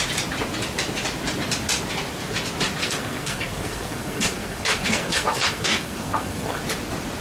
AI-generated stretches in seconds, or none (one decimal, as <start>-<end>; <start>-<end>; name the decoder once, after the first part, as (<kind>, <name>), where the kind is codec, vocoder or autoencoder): 2.8-6.6 (codec, SNAC)